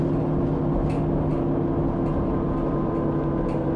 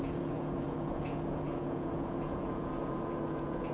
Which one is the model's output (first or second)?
second